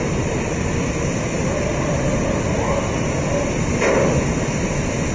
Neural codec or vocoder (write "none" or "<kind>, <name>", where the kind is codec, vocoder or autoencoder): none